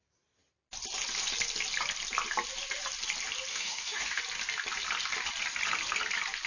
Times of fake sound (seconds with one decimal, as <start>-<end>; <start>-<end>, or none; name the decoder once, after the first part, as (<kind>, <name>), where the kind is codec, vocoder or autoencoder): 3.5-4.2 (autoencoder, DAC-VAE)